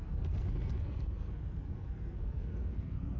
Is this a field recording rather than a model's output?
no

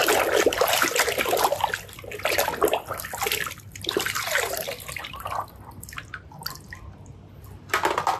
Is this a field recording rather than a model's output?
yes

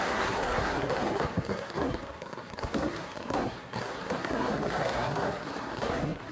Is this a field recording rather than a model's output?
no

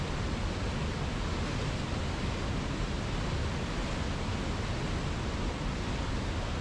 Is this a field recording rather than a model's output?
yes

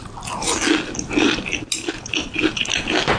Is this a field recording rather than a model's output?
yes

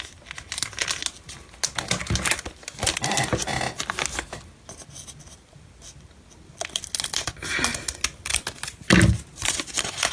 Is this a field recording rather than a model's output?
yes